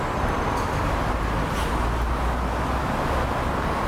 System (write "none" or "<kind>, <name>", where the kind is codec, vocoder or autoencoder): none